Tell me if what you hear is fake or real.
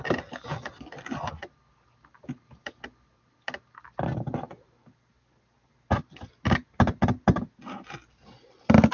real